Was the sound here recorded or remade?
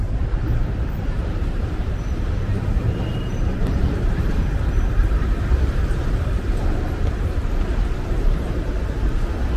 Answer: remade